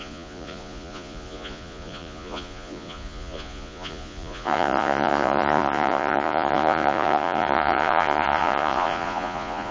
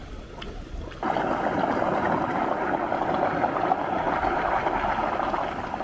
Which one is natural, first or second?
second